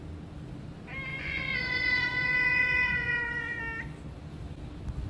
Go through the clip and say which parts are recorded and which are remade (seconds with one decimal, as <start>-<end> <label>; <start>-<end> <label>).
0.0-1.1 recorded; 1.1-3.6 remade; 3.6-5.1 recorded